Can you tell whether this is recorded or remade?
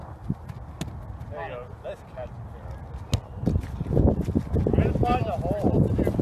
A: recorded